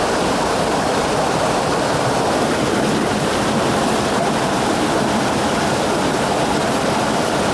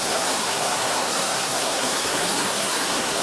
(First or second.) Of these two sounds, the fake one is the second